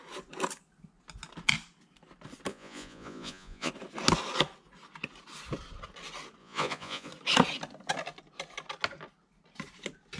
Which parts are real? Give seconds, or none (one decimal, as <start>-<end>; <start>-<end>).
0.0-2.5; 3.7-6.4; 7.1-10.2